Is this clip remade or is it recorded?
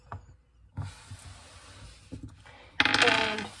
recorded